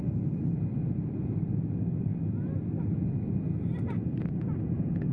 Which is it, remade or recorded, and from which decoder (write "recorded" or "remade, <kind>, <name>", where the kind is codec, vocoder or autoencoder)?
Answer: recorded